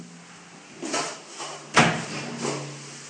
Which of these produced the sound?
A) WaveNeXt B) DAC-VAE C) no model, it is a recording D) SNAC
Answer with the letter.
C